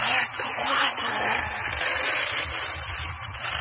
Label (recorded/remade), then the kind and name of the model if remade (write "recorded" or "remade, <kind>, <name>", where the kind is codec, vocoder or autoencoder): recorded